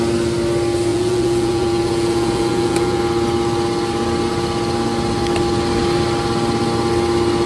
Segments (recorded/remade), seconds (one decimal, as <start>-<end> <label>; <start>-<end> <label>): 0.0-0.9 recorded; 0.9-3.0 remade; 3.0-7.5 recorded